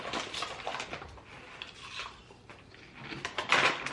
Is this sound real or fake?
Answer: real